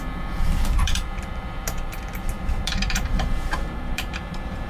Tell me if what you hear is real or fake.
fake